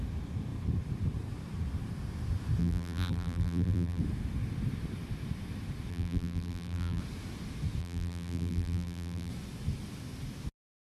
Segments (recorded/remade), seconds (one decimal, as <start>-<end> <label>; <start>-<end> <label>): 0.0-2.6 recorded; 2.6-4.0 remade; 4.0-5.9 recorded; 5.9-7.0 remade; 7.0-7.8 recorded; 7.8-9.3 remade; 9.3-11.0 recorded